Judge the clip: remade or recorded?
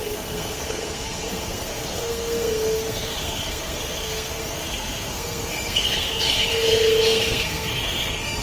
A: remade